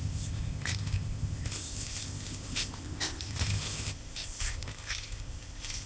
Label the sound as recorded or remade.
remade